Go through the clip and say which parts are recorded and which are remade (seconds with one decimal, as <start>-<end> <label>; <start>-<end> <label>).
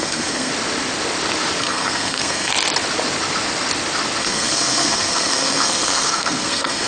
0.0-0.5 remade; 0.5-1.6 recorded; 1.6-2.5 remade; 2.5-4.2 recorded; 4.2-6.9 remade